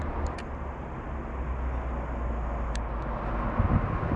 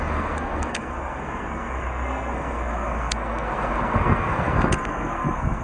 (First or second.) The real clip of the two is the first